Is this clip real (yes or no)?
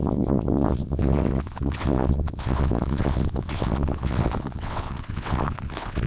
no